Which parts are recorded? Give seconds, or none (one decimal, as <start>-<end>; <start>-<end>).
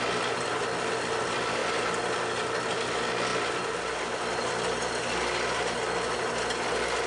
0.0-7.1